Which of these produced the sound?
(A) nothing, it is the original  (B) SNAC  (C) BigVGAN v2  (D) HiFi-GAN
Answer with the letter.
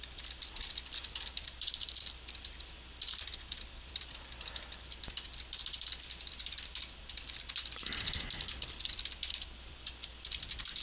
C